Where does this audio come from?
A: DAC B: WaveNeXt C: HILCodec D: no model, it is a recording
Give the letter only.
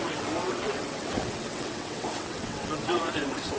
B